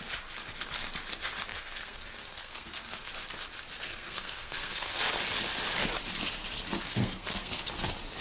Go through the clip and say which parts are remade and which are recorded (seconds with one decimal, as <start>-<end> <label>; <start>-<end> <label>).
0.0-1.5 recorded; 1.5-3.1 remade; 3.1-3.9 recorded; 3.9-5.0 remade; 5.0-6.9 recorded; 6.9-7.7 remade; 7.7-8.2 recorded